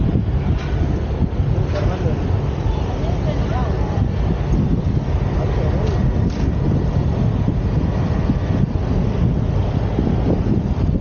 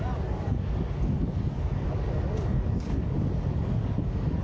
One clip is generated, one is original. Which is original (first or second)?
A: first